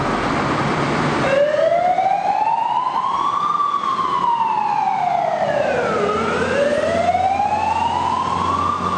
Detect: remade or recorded recorded